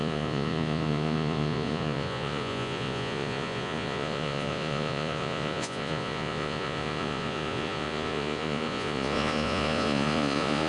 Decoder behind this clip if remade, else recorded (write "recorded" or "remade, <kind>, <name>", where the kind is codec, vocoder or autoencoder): remade, vocoder, Vocos